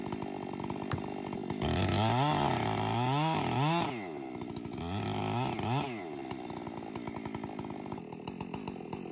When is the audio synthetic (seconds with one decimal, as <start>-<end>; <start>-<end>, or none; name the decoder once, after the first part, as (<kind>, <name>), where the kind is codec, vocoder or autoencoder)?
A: none